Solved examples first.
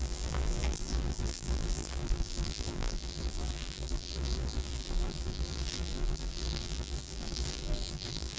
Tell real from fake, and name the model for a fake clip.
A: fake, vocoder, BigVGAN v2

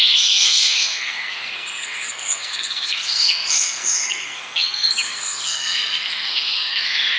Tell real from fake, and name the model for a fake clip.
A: fake, codec, SNAC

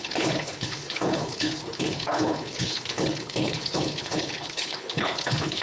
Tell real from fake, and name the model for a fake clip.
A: fake, codec, HILCodec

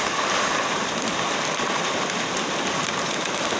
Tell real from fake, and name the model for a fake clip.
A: real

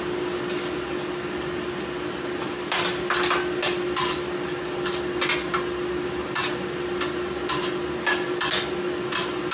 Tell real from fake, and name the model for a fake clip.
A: real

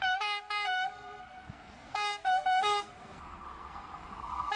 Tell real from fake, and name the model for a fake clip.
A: fake, codec, SNAC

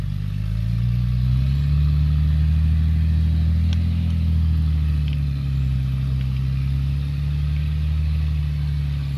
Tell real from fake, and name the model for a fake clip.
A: real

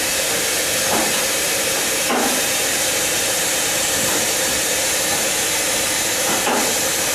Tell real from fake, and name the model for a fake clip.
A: fake, vocoder, BigVGAN v2